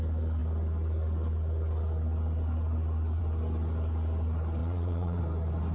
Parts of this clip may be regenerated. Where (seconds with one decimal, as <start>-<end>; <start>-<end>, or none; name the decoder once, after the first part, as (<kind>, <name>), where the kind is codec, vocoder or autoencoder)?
4.6-5.2 (vocoder, Vocos)